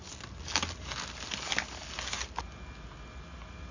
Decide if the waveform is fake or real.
real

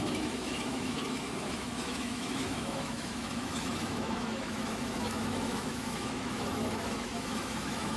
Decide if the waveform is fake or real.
fake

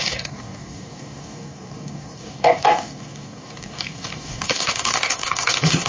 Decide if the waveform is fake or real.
fake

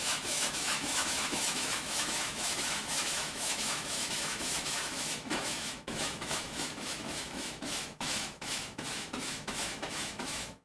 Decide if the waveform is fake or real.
fake